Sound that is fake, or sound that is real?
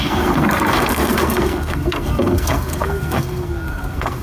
fake